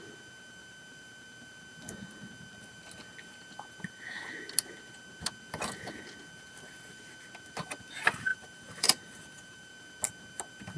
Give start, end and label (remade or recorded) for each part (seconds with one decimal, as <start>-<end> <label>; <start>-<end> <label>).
0.0-8.3 recorded; 8.3-9.7 remade; 9.7-10.8 recorded